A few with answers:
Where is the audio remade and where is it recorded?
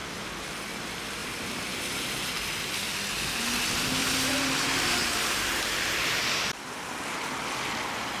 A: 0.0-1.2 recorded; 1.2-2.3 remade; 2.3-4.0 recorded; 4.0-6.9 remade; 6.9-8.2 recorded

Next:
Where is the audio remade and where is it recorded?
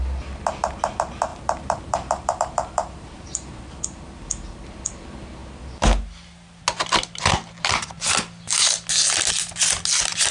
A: 0.0-1.3 recorded; 1.3-3.8 remade; 3.8-10.3 recorded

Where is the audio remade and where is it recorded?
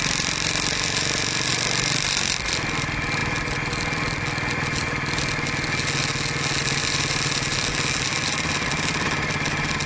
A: 0.0-1.5 remade; 1.5-2.7 recorded; 2.7-3.2 remade; 3.2-6.8 recorded; 6.8-9.9 remade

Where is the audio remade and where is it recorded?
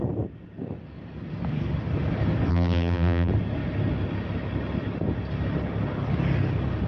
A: 0.0-2.5 recorded; 2.5-3.3 remade; 3.3-6.9 recorded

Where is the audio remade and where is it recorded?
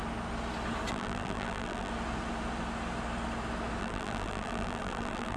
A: 0.0-0.9 recorded; 0.9-1.9 remade; 1.9-3.8 recorded; 3.8-5.4 remade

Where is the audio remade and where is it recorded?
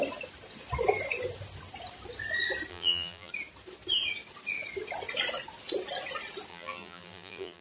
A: 0.0-2.7 recorded; 2.7-3.3 remade; 3.3-6.5 recorded; 6.5-7.6 remade